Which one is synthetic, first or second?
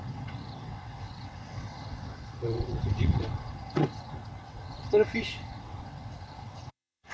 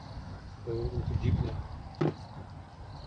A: first